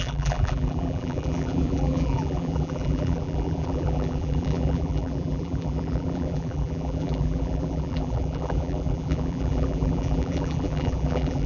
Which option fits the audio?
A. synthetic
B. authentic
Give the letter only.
A